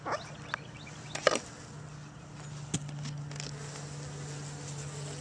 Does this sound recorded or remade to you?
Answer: recorded